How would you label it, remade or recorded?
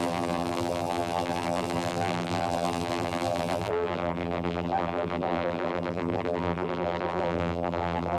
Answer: remade